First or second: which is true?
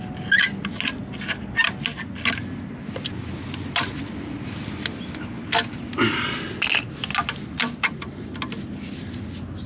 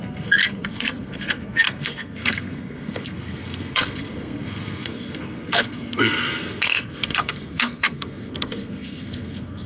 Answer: first